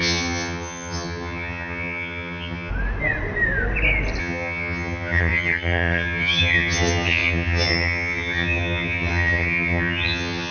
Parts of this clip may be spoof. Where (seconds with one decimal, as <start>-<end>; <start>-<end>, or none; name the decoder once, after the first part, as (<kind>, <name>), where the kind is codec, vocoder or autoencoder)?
0.0-2.7 (vocoder, HiFi-GAN); 4.2-10.5